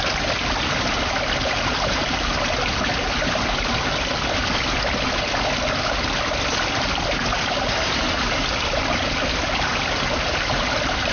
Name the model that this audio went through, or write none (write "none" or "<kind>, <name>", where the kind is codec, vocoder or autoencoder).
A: none